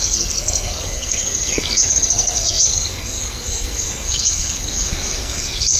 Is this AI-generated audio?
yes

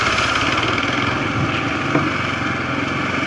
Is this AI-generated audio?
no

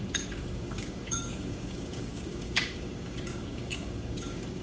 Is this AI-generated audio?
yes